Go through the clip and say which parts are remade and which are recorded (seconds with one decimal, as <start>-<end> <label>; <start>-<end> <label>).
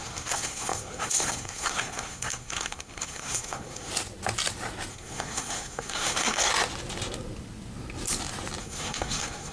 0.0-3.9 remade; 3.9-4.9 recorded; 4.9-6.5 remade; 6.5-8.6 recorded; 8.6-9.5 remade